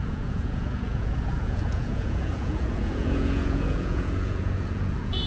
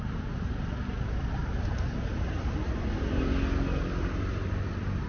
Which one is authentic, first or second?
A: second